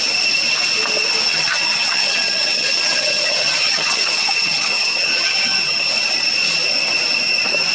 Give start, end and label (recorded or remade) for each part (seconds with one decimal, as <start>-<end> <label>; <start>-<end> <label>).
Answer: 0.0-1.3 recorded; 1.3-5.9 remade; 5.9-7.7 recorded